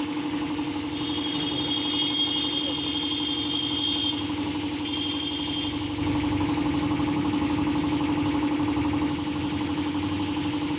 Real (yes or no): yes